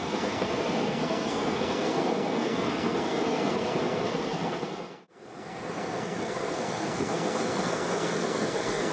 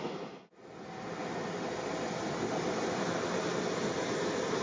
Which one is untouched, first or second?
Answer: second